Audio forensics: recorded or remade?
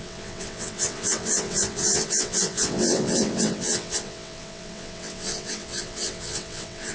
remade